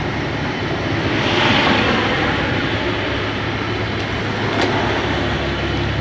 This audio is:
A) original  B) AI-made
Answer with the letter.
A